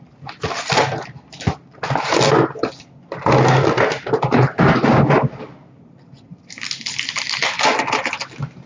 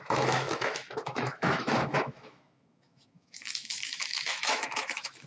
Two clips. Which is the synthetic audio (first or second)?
second